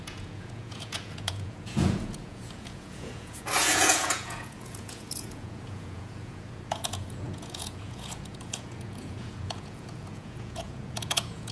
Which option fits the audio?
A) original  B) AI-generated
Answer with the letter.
B